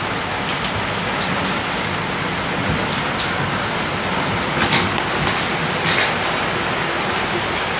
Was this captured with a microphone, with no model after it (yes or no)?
yes